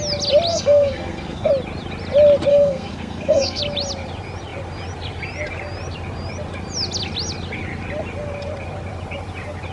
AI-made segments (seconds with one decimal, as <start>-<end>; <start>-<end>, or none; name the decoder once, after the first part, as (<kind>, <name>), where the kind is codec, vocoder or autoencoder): 0.5-1.5 (codec, SNAC); 2.5-3.6